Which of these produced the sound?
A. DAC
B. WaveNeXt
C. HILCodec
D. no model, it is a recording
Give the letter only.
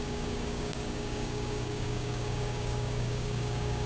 A